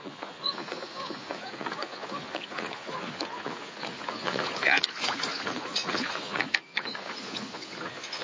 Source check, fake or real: fake